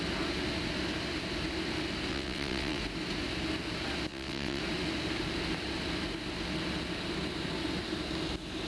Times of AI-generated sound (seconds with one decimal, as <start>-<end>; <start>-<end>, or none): 2.1-2.8; 4.1-4.6